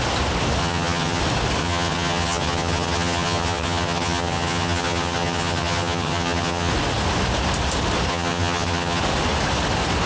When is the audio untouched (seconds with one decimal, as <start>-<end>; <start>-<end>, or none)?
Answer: 0.0-0.6; 1.2-1.6; 6.7-8.1; 9.0-10.1